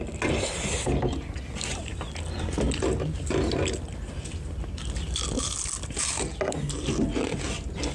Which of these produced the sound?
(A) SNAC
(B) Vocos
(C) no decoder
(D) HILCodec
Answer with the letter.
C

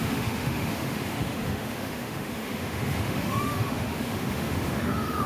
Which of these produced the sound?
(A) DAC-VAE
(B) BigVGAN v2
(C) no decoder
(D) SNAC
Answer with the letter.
A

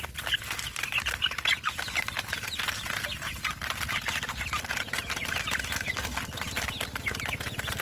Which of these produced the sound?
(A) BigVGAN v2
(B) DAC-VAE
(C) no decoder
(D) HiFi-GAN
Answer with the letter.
C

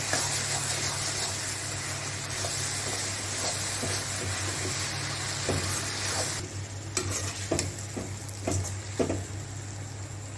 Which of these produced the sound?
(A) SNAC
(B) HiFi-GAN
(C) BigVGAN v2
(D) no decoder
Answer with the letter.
D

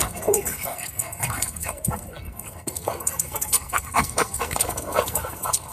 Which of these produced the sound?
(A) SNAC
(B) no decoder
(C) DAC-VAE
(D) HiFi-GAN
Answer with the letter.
A